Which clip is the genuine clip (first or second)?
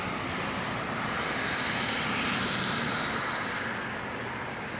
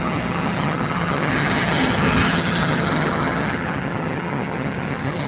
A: first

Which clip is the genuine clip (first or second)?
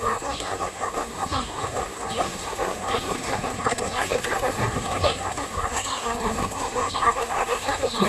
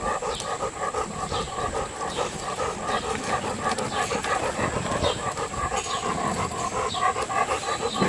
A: second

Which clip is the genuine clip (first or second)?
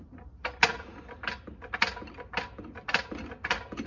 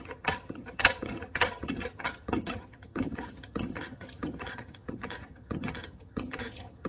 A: first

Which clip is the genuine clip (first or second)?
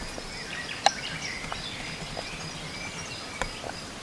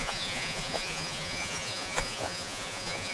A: first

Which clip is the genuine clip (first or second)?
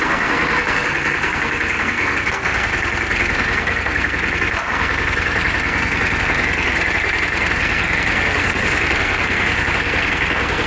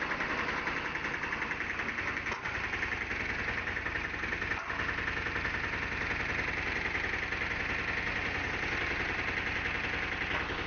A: second